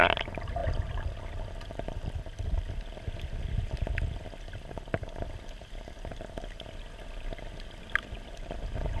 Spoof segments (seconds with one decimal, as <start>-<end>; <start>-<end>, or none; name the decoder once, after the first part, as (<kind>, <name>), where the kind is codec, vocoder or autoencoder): none